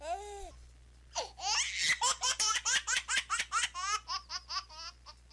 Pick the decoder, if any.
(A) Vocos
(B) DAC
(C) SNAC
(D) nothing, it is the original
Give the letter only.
D